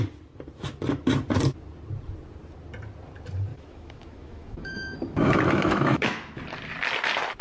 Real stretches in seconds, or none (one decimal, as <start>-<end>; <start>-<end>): 0.0-3.5; 6.4-7.4